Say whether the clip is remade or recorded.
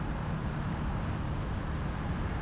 remade